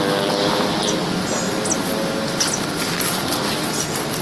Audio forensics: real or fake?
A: real